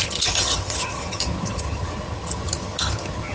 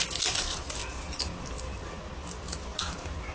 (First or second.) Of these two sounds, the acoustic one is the second